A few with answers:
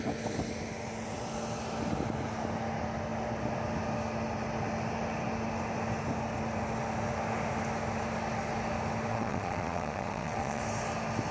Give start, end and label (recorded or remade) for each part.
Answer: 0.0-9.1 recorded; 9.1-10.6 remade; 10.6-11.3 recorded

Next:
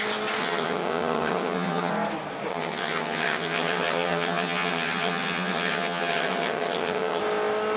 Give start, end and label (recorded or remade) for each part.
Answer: 0.0-0.4 recorded; 0.4-1.9 remade; 1.9-2.5 recorded; 2.5-7.2 remade; 7.2-7.8 recorded

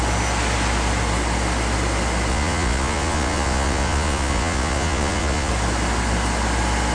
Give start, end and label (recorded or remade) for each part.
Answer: 0.0-2.3 recorded; 2.3-5.5 remade; 5.5-6.9 recorded

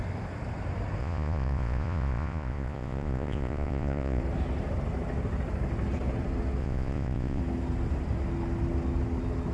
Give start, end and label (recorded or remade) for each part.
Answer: 0.0-1.0 recorded; 1.0-4.2 remade; 4.2-6.6 recorded; 6.6-7.4 remade; 7.4-9.5 recorded

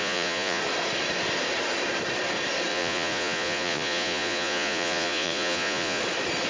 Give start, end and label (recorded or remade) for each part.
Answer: 0.0-0.6 remade; 0.6-2.7 recorded; 2.7-6.0 remade; 6.0-6.5 recorded

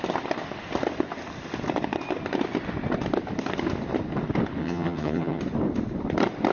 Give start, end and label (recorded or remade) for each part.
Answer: 0.0-4.6 recorded; 4.6-5.4 remade; 5.4-6.5 recorded

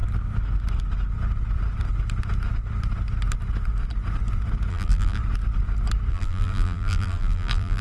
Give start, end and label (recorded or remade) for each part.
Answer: 0.0-4.7 recorded; 4.7-5.2 remade; 5.2-6.1 recorded; 6.1-7.8 remade

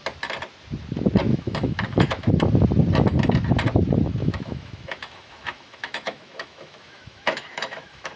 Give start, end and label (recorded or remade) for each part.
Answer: 0.0-1.3 recorded; 1.3-2.3 remade; 2.3-4.2 recorded; 4.2-8.2 remade